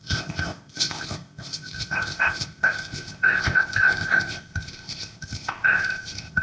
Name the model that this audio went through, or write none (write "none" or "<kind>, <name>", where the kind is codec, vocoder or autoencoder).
codec, ZipCodec